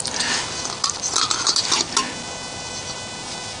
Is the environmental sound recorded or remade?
recorded